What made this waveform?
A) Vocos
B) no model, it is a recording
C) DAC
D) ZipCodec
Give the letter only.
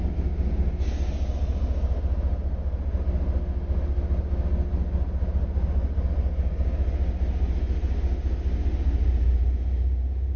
B